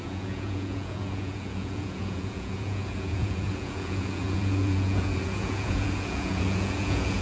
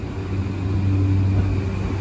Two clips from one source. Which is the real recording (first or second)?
second